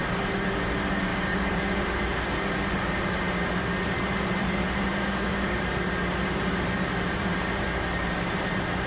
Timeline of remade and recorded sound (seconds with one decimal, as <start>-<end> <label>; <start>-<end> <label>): 0.0-1.1 recorded; 1.1-1.6 remade; 1.6-4.9 recorded; 4.9-5.6 remade; 5.6-8.9 recorded